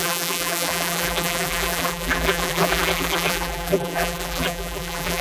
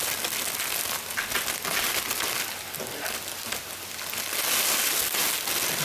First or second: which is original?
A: second